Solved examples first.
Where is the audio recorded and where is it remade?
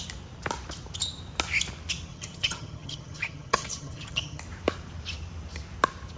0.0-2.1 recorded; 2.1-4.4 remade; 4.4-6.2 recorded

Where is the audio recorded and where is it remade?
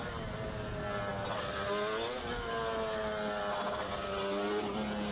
0.0-5.1 recorded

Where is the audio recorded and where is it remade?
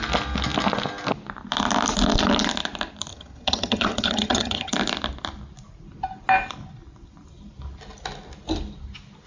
0.0-3.1 recorded; 3.1-4.7 remade; 4.7-9.3 recorded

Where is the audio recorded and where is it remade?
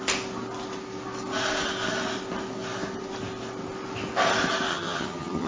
0.0-4.7 recorded; 4.7-5.5 remade